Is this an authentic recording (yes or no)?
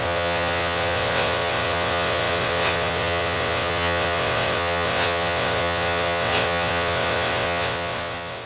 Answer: no